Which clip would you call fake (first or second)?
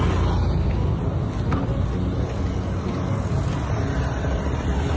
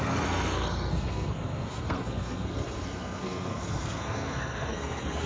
second